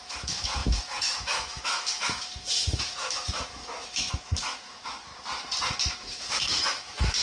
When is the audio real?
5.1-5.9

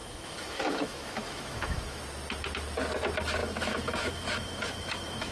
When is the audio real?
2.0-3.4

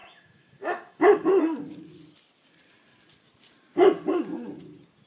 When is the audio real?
1.4-5.1